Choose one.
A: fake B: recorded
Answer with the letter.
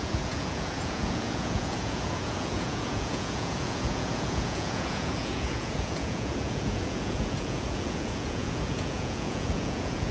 A